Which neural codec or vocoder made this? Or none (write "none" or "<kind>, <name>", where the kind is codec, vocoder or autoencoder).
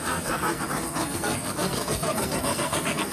codec, SNAC